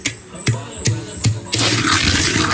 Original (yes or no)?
yes